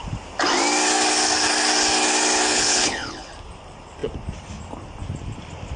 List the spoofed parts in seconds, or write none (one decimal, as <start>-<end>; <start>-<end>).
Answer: 2.5-3.3